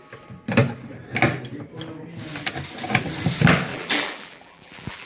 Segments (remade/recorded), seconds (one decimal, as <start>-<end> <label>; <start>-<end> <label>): 0.0-3.7 recorded; 3.7-5.1 remade